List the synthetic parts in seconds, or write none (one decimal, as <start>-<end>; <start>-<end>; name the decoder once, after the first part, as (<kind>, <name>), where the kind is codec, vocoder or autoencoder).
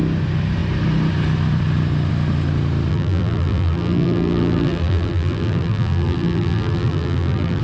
2.9-7.6 (vocoder, BigVGAN v2)